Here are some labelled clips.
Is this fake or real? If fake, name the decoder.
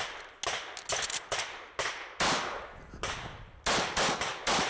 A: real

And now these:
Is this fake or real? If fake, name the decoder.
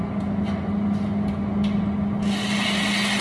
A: real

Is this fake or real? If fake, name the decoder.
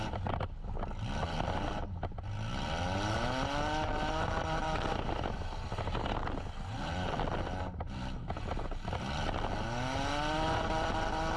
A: real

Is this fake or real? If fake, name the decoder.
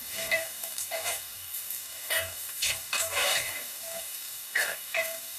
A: fake, codec, DAC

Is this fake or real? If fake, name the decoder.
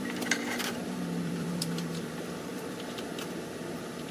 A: fake, vocoder, BigVGAN v2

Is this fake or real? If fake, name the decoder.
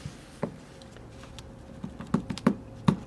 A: fake, vocoder, BigVGAN v2